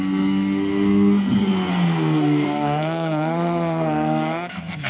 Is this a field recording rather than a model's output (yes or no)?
no